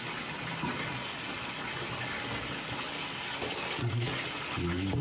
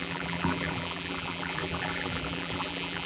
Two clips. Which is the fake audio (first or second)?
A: second